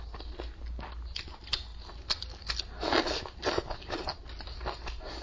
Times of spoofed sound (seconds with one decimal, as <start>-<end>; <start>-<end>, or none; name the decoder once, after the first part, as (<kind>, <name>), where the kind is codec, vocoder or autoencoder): none